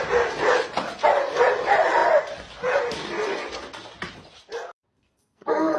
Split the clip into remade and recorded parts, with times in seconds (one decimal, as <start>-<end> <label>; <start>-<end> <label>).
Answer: 0.0-4.9 recorded; 4.9-5.8 remade